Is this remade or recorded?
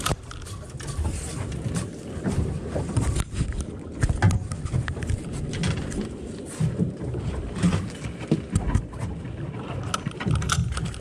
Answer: recorded